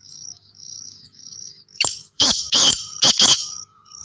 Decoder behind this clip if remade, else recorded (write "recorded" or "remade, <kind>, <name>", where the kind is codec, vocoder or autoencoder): remade, autoencoder, DAC-VAE